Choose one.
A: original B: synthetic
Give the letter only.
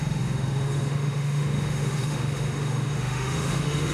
B